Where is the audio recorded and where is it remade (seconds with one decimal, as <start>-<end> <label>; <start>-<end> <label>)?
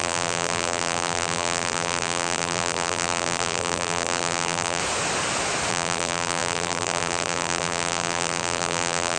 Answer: 0.0-4.8 remade; 4.8-5.7 recorded; 5.7-9.2 remade